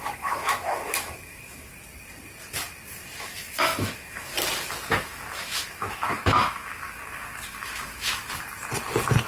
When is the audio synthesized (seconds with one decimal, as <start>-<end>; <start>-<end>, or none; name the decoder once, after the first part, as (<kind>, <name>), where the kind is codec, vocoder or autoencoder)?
0.0-1.7 (autoencoder, DAC-VAE); 3.2-4.3; 4.9-8.2